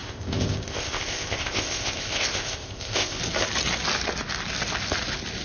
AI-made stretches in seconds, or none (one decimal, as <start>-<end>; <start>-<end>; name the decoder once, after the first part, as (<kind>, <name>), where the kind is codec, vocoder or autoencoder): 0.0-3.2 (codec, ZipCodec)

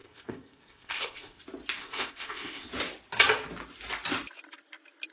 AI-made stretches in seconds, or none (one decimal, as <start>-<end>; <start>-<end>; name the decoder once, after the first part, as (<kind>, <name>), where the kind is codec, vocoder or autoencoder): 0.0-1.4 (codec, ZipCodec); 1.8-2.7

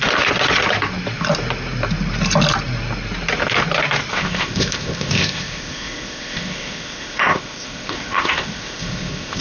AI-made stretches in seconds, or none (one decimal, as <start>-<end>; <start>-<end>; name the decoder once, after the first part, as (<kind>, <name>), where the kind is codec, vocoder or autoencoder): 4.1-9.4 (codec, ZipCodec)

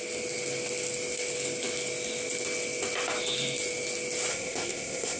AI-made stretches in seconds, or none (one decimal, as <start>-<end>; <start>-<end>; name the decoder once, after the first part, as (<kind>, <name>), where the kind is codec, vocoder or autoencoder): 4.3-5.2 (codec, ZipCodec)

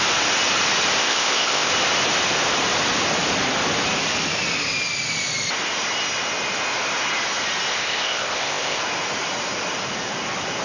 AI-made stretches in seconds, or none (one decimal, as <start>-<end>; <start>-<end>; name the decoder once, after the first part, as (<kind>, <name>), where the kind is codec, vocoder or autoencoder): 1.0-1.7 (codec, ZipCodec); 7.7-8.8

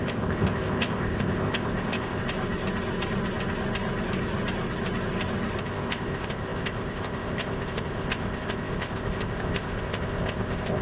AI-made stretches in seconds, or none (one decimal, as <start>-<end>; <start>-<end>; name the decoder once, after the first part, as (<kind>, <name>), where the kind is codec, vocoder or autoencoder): 0.0-2.2 (codec, ZipCodec); 5.6-10.8

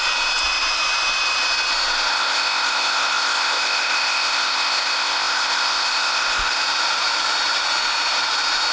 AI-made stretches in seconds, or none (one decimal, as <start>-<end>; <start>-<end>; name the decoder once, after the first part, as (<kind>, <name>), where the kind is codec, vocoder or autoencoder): 2.1-6.6 (codec, ZipCodec)